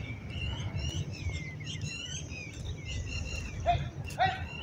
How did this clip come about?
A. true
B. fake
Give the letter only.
A